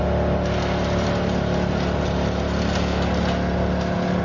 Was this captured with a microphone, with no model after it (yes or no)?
yes